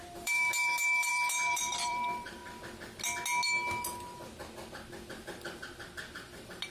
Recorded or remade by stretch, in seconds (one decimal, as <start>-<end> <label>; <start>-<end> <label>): 0.0-2.4 remade; 2.4-6.7 recorded